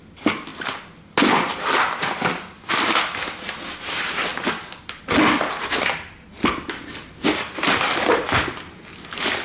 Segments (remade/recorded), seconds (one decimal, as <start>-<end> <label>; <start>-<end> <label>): 0.0-9.4 recorded